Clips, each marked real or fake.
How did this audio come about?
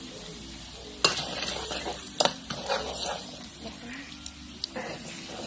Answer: real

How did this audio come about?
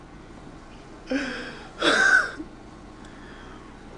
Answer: fake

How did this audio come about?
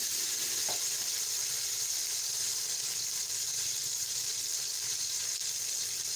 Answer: fake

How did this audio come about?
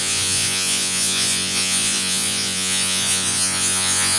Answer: fake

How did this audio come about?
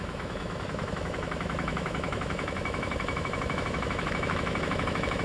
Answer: fake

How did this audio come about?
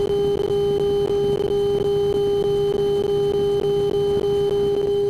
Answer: real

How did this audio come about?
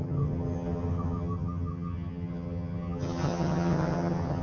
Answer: fake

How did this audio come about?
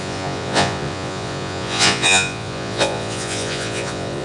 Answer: fake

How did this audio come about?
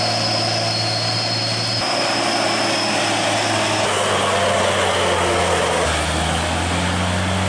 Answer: real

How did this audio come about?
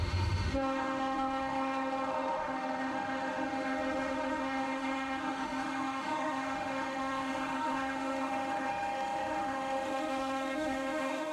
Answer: fake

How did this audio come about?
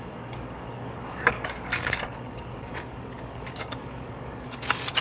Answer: fake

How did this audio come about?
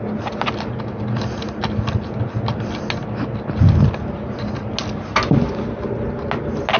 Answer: real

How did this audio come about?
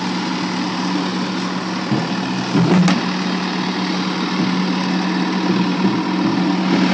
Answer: real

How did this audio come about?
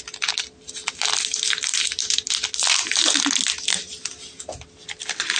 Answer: real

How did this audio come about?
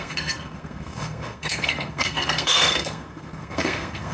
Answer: fake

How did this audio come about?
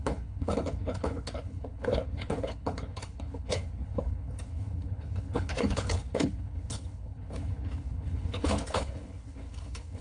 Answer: fake